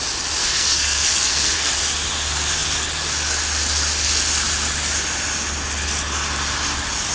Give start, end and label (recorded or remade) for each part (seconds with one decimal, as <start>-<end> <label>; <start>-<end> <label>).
0.0-0.4 recorded; 0.4-1.7 remade; 1.7-7.1 recorded

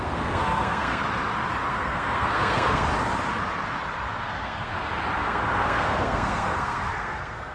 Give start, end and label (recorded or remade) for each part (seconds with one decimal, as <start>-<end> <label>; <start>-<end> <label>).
0.0-1.0 remade; 1.0-1.7 recorded; 1.7-2.9 remade; 2.9-4.2 recorded; 4.2-4.7 remade; 4.7-5.2 recorded; 5.2-7.5 remade

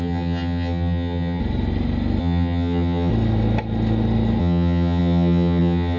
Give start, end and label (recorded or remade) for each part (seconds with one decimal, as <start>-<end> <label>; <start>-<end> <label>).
0.0-1.4 remade; 1.4-2.2 recorded; 2.2-3.1 remade; 3.1-4.4 recorded; 4.4-6.0 remade

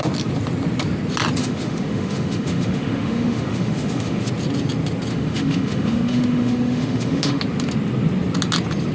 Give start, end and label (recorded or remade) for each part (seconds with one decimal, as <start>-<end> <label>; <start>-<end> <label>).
0.0-1.4 recorded; 1.4-4.3 remade; 4.3-5.1 recorded; 5.1-7.4 remade; 7.4-8.9 recorded